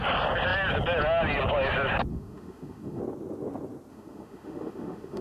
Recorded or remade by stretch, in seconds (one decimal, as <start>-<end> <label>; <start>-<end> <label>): 0.0-2.1 recorded; 2.1-3.0 remade; 3.0-3.9 recorded; 3.9-5.2 remade